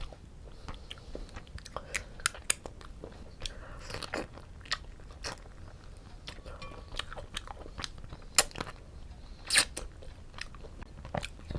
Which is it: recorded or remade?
recorded